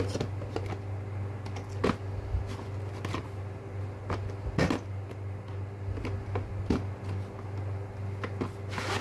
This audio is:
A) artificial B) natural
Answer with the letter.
B